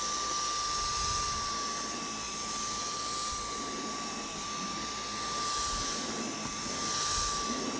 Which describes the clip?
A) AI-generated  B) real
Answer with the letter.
B